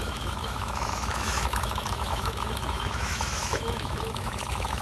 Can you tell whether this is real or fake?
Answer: fake